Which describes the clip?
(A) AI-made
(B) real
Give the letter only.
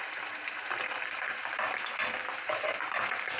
A